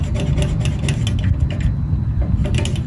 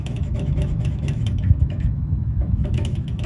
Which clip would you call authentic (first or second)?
first